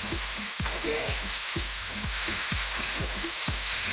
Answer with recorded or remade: remade